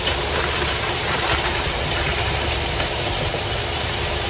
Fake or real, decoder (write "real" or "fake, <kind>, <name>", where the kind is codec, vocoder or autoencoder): fake, vocoder, BigVGAN v2